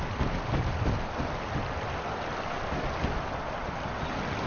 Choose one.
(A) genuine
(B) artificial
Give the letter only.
A